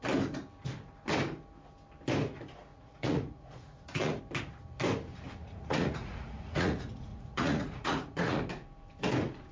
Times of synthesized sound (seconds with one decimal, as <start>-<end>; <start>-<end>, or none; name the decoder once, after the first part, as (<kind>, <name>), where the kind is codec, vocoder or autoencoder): 2.7-4.2 (vocoder, Vocos); 5.4-8.4